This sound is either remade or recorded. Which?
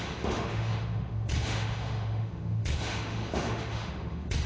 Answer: remade